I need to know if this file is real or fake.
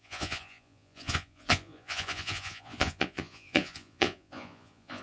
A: fake